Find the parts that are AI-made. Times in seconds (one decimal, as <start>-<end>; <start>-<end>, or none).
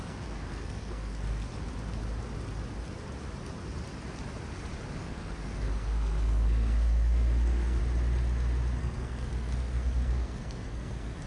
0.0-1.5; 5.0-7.8; 8.8-11.3